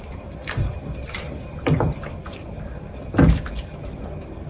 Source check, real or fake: real